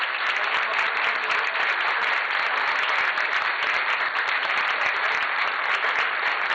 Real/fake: real